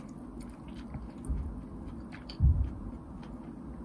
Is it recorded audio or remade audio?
recorded